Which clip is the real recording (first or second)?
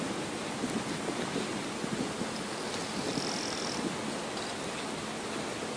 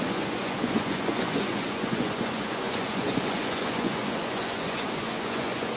first